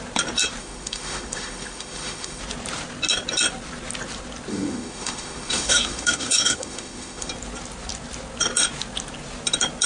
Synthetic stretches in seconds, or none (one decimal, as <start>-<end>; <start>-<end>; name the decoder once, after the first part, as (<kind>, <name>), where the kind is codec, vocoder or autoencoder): 0.6-2.4 (autoencoder, DAC-VAE); 4.5-7.3